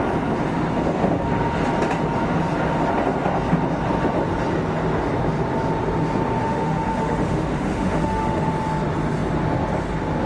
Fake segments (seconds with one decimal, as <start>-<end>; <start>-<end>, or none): 6.4-8.5